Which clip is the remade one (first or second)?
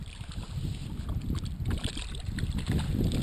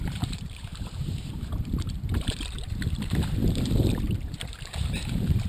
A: second